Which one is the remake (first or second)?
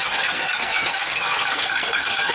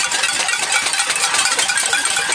first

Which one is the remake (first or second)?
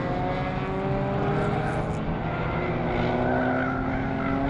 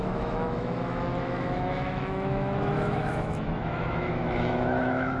second